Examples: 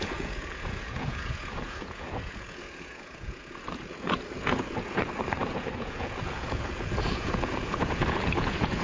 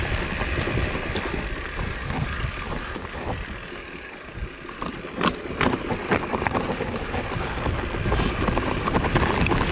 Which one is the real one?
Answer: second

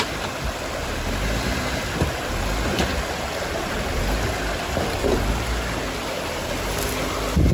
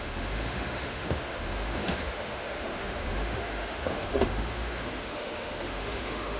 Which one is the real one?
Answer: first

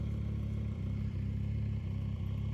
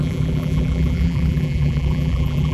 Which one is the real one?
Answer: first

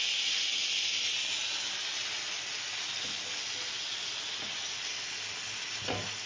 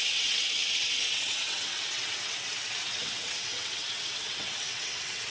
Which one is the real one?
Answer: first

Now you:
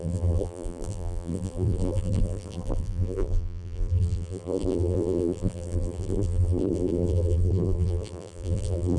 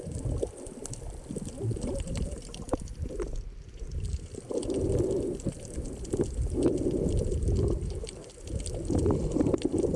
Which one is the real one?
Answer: second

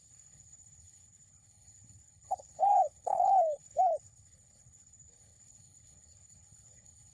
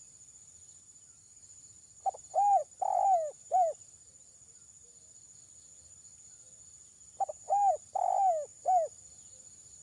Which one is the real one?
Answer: second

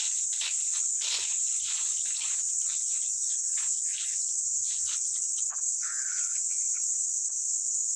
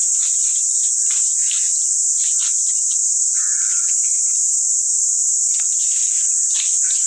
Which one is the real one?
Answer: second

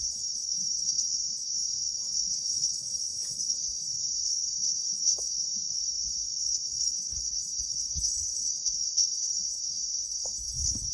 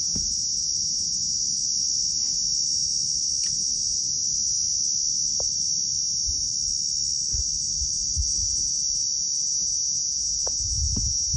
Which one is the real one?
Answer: second